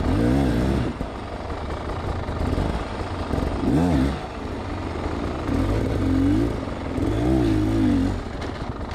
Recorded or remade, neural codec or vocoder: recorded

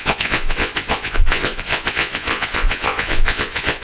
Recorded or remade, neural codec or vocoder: remade, vocoder, Vocos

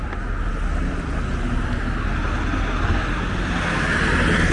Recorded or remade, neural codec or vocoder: recorded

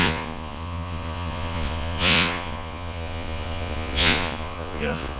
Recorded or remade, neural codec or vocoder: remade, vocoder, Vocos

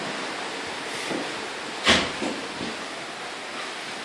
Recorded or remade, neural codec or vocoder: recorded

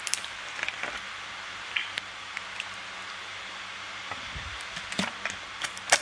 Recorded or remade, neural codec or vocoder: recorded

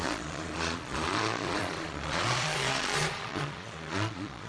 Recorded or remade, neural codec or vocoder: remade, vocoder, Vocos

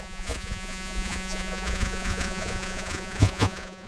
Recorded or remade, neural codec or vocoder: remade, vocoder, Vocos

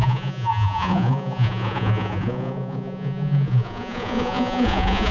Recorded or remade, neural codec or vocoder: remade, vocoder, Vocos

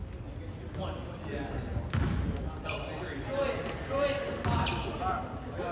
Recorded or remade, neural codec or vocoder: recorded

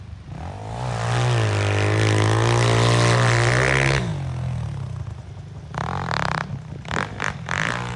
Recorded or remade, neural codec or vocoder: recorded